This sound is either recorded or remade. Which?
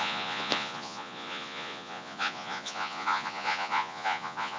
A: remade